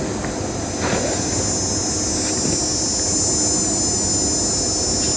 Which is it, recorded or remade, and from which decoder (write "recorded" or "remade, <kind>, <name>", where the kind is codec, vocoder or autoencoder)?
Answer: recorded